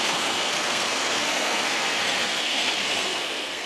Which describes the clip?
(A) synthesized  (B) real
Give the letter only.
A